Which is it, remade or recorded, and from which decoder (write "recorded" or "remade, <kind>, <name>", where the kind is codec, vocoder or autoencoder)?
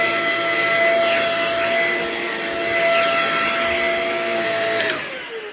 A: recorded